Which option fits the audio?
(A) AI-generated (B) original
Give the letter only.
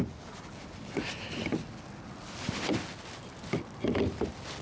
B